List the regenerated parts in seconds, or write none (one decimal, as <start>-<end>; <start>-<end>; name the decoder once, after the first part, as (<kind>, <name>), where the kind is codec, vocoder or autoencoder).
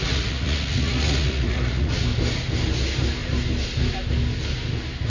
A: 0.0-2.0 (vocoder, Vocos)